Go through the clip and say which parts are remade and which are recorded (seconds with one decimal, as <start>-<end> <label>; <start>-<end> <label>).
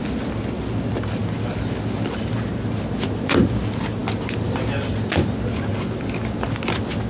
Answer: 0.0-7.1 recorded